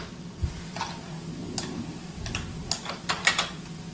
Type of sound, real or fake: real